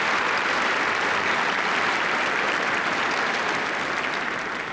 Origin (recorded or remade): recorded